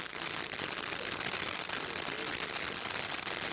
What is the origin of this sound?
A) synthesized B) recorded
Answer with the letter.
B